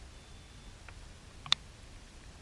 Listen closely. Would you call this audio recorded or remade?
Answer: recorded